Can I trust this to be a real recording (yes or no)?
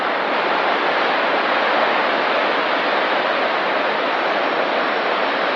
yes